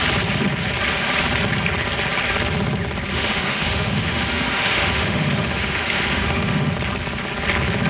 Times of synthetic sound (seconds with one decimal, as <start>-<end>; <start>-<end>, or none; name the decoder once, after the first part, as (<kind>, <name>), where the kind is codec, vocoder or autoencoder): 3.1-6.7 (autoencoder, DAC-VAE)